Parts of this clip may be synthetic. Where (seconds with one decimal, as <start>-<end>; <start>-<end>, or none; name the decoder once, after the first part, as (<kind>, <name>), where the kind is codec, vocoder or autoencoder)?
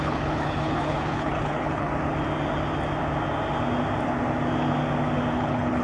0.0-1.9 (codec, HILCodec); 5.3-5.8